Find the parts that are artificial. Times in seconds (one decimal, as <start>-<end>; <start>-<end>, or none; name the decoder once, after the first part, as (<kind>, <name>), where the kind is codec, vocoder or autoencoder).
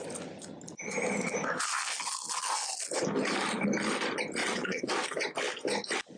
4.4-4.9 (vocoder, WaveNeXt)